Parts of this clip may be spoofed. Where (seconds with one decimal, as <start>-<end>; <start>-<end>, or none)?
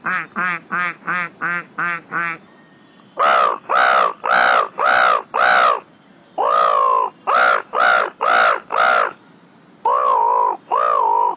none